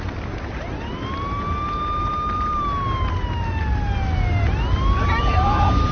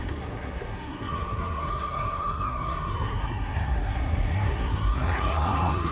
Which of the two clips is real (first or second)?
first